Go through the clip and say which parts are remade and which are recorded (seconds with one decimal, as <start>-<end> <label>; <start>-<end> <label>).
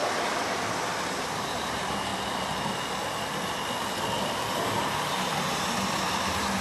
0.0-1.2 recorded; 1.2-2.1 remade; 2.1-4.5 recorded; 4.5-6.6 remade